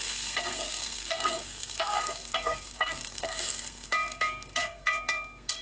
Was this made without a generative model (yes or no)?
no